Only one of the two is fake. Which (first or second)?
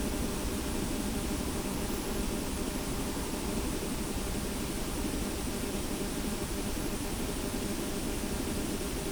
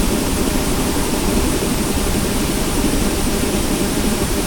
second